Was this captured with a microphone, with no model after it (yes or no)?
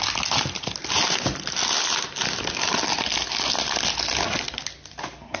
yes